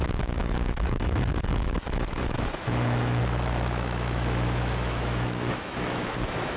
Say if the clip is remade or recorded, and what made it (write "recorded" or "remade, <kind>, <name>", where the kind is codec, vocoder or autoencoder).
remade, autoencoder, DAC-VAE